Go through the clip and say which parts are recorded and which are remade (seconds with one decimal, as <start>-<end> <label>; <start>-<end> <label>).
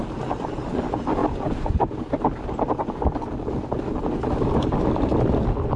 0.0-5.8 recorded